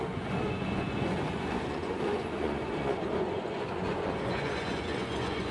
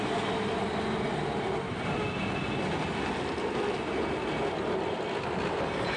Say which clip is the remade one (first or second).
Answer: first